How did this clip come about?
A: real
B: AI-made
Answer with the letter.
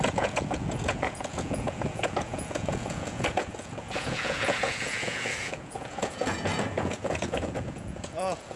B